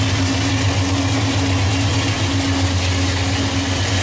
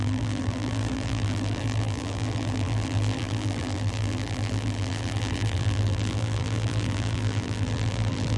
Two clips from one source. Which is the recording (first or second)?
first